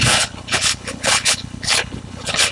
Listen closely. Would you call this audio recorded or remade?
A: remade